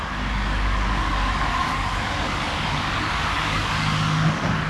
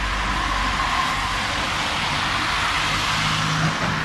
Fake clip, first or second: first